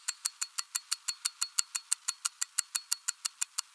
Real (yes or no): yes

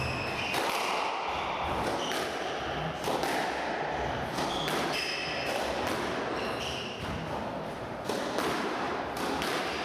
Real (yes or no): yes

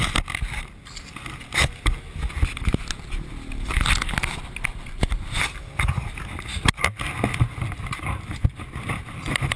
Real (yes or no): yes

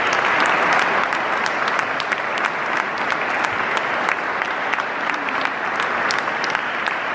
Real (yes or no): yes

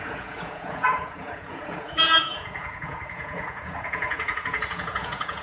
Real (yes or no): no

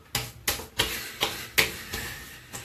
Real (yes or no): yes